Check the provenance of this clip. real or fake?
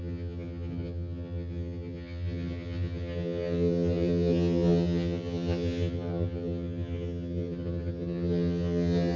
fake